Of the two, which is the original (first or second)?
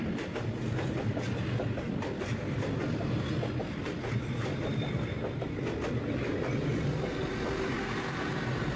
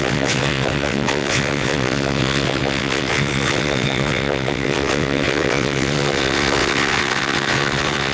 first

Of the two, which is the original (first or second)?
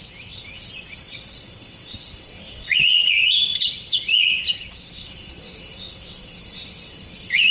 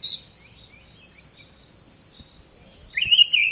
second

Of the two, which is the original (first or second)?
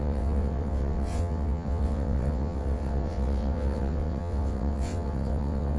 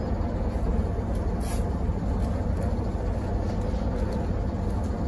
second